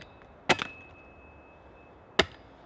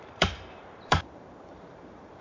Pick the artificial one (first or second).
second